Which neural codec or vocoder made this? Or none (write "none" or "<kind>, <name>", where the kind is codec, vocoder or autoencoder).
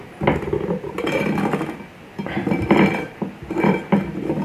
none